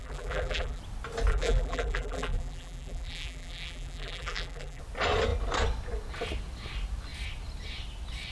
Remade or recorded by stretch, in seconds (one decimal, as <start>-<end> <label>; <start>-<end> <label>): 0.0-0.8 remade; 0.8-1.3 recorded; 1.3-4.8 remade; 4.8-8.3 recorded

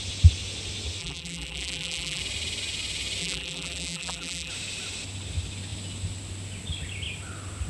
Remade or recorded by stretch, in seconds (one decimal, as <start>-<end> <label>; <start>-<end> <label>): 0.0-1.0 recorded; 1.0-2.2 remade; 2.2-3.2 recorded; 3.2-4.5 remade; 4.5-7.7 recorded

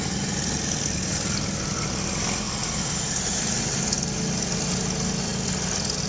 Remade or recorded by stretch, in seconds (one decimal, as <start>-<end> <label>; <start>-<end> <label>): 0.0-6.1 recorded

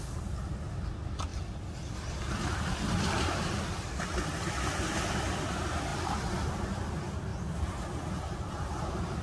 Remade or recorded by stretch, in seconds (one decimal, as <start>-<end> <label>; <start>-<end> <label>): 0.0-9.2 recorded

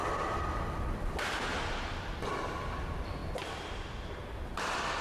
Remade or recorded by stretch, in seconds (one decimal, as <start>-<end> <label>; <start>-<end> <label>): 0.0-3.2 recorded; 3.2-4.2 remade; 4.2-5.0 recorded

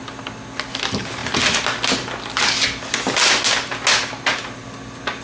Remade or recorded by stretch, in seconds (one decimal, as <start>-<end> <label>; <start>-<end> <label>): 0.0-5.2 recorded

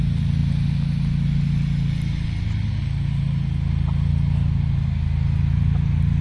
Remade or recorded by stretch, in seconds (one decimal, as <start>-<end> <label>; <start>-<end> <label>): 0.0-6.2 recorded

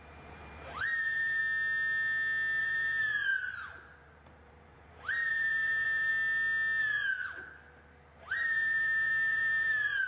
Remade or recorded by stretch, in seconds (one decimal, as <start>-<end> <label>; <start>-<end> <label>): 0.0-1.4 remade; 1.4-2.6 recorded; 2.6-6.1 remade; 6.1-8.2 recorded; 8.2-10.1 remade